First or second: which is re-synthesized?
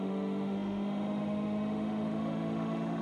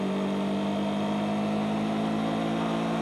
first